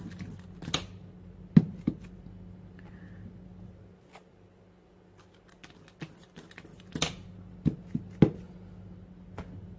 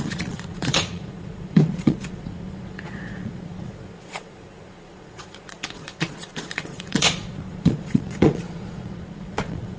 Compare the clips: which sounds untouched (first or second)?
first